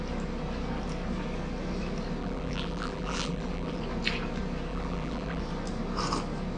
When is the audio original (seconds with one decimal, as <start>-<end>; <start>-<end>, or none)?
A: 0.0-2.2; 3.8-4.7; 5.4-6.6